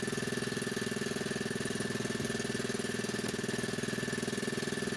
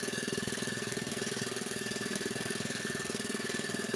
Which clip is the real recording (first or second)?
first